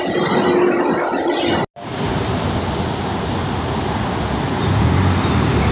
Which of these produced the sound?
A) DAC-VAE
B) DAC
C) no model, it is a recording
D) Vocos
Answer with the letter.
C